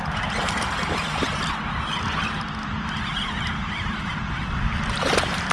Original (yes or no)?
yes